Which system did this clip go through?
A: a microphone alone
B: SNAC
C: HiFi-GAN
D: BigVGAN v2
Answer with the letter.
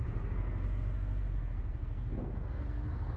B